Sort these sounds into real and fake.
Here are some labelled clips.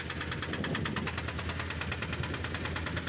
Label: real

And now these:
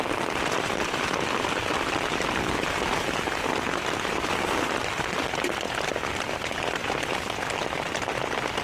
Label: real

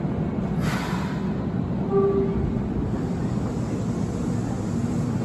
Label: real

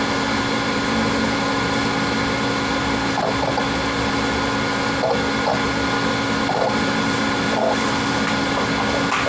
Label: real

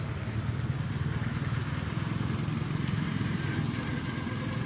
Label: real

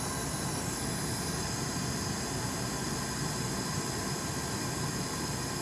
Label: real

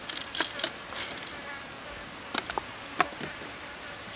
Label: real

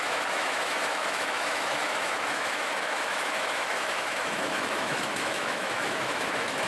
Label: fake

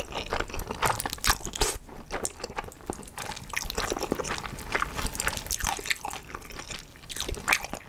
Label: real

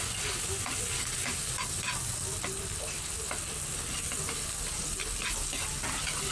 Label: real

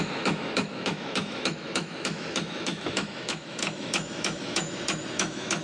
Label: fake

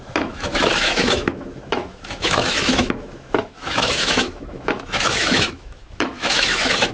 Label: fake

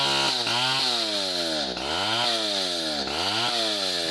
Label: real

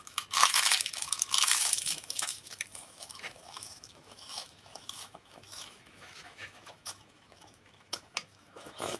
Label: fake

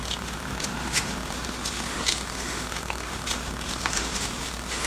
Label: fake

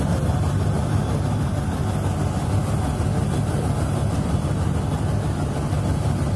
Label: real